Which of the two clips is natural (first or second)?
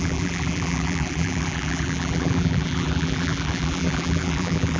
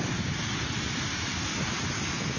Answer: second